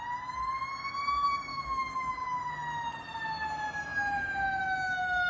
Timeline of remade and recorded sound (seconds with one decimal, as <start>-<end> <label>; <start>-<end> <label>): 0.0-1.5 recorded; 1.5-2.5 remade; 2.5-5.3 recorded

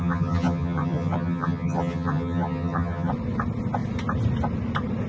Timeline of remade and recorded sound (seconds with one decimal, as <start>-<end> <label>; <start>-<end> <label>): 0.0-3.1 remade; 3.1-5.1 recorded